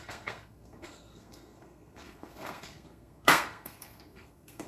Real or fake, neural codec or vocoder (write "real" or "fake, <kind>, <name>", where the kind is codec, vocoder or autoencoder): fake, codec, SNAC